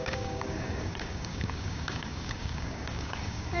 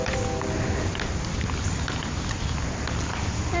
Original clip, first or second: second